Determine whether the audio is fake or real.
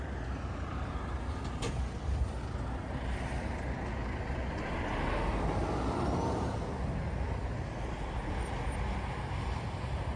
real